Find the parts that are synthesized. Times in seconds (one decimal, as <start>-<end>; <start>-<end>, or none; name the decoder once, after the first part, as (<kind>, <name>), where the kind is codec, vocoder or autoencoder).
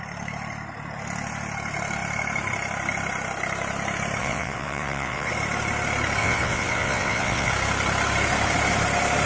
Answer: 4.2-5.3 (vocoder, WaveNeXt); 6.2-7.5